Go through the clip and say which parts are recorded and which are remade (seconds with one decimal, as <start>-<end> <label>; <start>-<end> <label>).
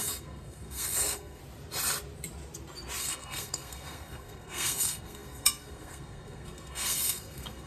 0.0-1.4 remade; 1.4-3.0 recorded; 3.0-7.7 remade